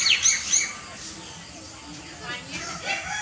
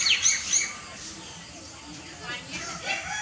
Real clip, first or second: first